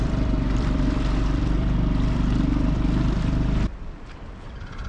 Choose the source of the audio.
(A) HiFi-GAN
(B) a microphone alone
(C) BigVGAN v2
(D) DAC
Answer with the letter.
C